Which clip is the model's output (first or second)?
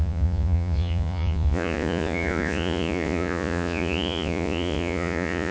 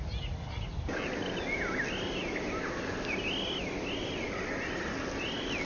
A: first